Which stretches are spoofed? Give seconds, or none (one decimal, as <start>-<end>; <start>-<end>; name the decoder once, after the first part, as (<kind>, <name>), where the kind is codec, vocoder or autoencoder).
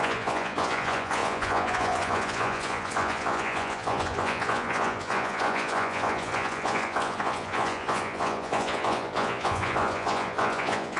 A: 0.0-11.0 (vocoder, Vocos)